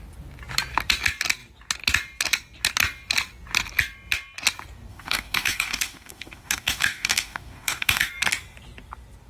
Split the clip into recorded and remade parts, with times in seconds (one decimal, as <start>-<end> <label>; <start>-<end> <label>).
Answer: 0.0-4.9 recorded; 4.9-8.1 remade; 8.1-9.3 recorded

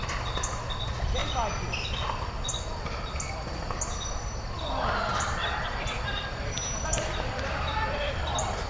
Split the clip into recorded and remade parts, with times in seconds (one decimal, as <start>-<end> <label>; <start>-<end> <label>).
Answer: 0.0-8.7 recorded